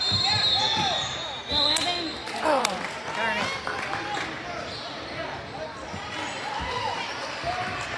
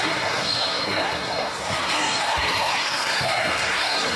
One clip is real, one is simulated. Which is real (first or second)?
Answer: first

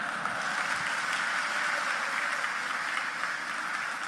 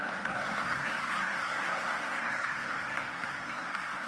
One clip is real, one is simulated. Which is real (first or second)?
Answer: first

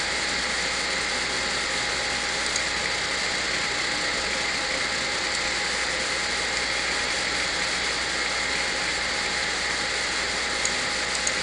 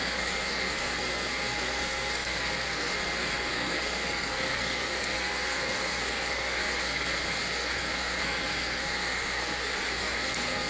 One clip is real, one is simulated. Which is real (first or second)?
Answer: first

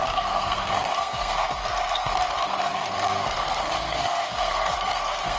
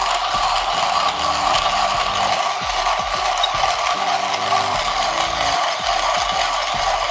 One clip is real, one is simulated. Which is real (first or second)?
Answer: second